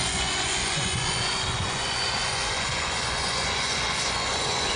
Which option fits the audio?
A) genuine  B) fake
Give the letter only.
B